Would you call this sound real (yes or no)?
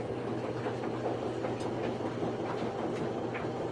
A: yes